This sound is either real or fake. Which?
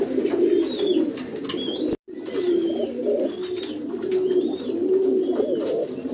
real